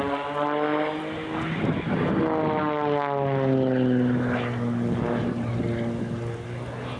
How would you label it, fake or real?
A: real